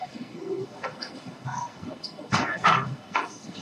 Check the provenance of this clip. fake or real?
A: fake